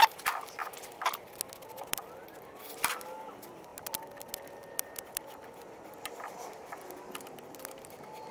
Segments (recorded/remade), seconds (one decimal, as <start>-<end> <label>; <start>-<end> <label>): 0.0-8.3 recorded